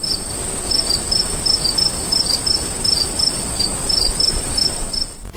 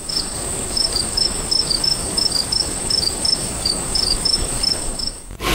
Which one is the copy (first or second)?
second